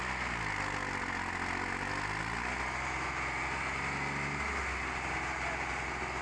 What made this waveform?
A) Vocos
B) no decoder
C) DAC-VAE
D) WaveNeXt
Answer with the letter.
B